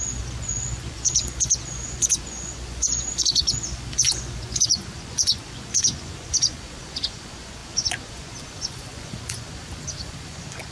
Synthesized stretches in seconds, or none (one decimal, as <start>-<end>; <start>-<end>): 0.0-10.7